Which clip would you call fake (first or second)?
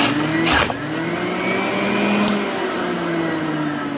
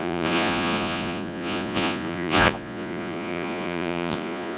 second